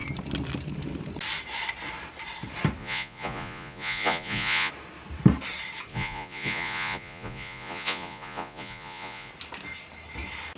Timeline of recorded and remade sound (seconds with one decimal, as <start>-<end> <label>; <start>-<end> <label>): 0.0-2.8 recorded; 2.8-4.7 remade; 4.7-5.9 recorded; 5.9-9.3 remade; 9.3-10.6 recorded